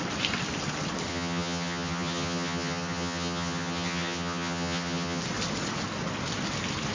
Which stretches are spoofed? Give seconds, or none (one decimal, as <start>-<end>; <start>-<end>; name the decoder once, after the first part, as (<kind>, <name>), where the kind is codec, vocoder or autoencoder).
1.1-5.2 (vocoder, HiFi-GAN)